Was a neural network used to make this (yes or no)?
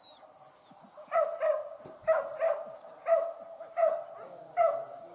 no